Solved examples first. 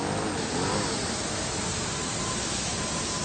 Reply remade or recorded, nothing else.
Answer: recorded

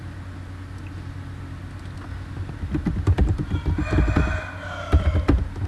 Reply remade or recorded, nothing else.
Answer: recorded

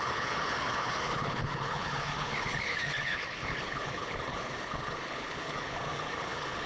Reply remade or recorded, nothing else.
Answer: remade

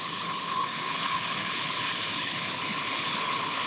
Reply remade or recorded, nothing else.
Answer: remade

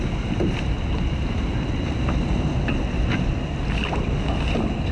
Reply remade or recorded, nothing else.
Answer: recorded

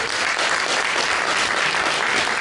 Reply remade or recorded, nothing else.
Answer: recorded